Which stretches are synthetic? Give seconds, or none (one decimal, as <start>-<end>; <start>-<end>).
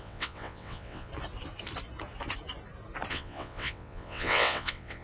0.0-1.1; 3.1-5.0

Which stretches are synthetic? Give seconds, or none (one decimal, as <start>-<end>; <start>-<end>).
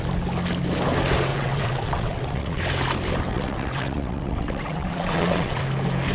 1.3-2.6; 3.3-5.6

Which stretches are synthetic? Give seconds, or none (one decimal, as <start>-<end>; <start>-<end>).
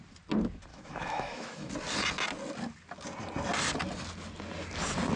0.7-1.7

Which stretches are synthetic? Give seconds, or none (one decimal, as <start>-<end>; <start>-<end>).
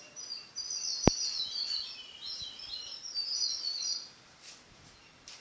none